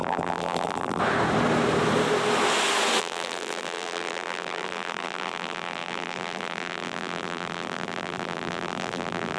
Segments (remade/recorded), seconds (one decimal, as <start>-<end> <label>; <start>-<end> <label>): 0.0-1.0 remade; 1.0-3.0 recorded; 3.0-9.4 remade